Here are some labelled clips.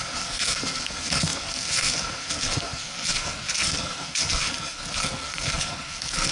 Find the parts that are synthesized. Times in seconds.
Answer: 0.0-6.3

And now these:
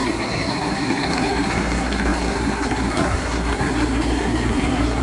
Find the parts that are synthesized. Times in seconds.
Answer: 0.0-5.0

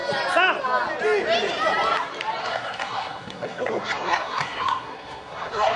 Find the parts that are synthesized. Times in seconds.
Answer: 2.4-5.8